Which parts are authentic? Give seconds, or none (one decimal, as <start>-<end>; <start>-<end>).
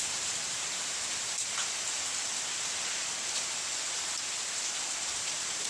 1.6-5.0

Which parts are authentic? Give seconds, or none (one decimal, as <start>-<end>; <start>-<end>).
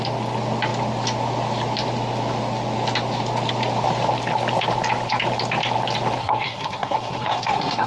0.0-6.2